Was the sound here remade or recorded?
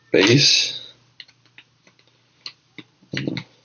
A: recorded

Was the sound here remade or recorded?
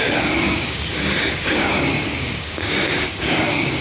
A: remade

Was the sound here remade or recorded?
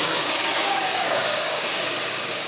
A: remade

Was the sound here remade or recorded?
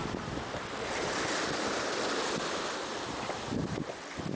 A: recorded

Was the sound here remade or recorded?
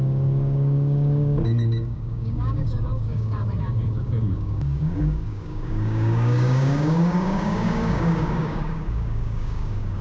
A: remade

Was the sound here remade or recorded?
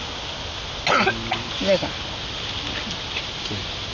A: recorded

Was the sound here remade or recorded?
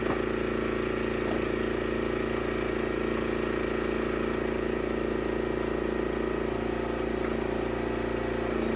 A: recorded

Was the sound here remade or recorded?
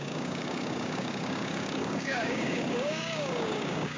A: remade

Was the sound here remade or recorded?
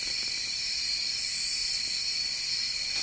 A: recorded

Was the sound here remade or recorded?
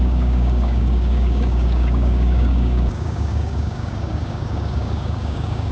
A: remade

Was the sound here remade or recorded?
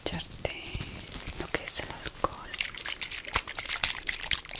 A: recorded